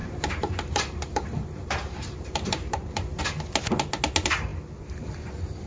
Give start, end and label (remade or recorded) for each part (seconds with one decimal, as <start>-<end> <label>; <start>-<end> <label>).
0.0-3.2 remade; 3.2-5.7 recorded